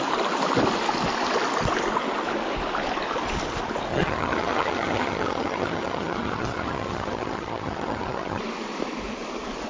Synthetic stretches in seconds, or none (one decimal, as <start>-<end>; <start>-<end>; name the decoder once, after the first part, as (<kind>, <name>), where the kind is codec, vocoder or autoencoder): 3.9-8.4 (vocoder, HiFi-GAN)